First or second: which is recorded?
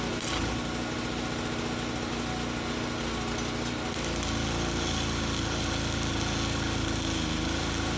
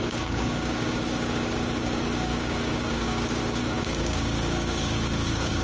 first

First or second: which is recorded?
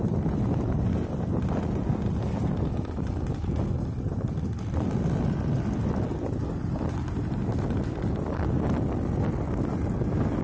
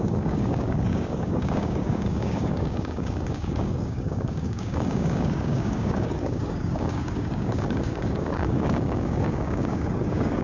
first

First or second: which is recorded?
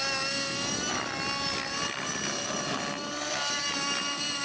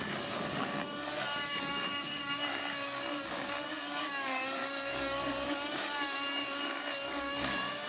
first